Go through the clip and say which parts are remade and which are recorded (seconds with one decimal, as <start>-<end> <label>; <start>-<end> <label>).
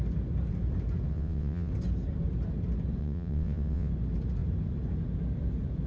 0.0-1.1 recorded; 1.1-1.7 remade; 1.7-3.0 recorded; 3.0-3.9 remade; 3.9-5.9 recorded